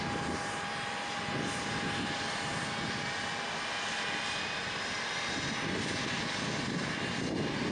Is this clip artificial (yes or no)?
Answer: no